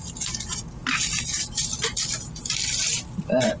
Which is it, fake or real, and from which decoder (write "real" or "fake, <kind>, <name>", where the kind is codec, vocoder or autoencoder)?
real